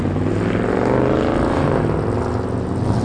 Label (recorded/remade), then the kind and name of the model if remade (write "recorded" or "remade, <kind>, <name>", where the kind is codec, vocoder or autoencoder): recorded